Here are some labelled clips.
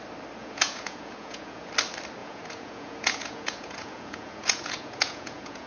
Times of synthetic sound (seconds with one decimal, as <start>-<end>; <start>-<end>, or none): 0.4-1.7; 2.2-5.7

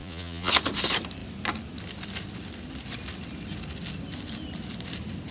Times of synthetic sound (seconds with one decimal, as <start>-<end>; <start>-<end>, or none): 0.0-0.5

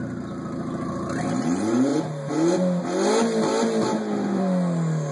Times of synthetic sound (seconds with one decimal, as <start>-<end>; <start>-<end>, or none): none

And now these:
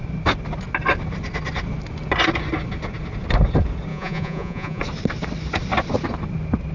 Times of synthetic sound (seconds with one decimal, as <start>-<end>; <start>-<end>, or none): 3.9-4.8